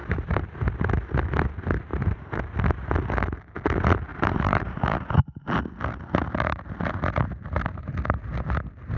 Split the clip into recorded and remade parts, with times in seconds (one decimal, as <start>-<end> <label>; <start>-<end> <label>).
0.0-0.7 remade; 0.7-1.9 recorded; 1.9-2.4 remade; 2.4-4.1 recorded; 4.1-5.6 remade; 5.6-9.0 recorded